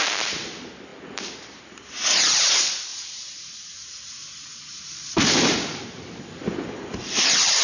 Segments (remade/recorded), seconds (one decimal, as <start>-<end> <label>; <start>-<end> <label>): 0.0-2.9 recorded; 2.9-7.6 remade